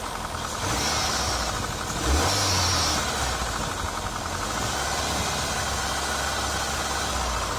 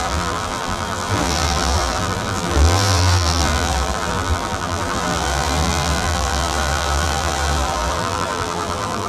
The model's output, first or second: second